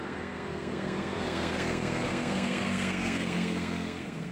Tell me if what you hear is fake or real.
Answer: fake